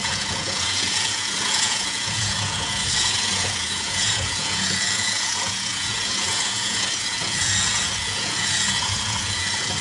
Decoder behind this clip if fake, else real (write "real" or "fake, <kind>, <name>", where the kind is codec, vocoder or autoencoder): fake, vocoder, Vocos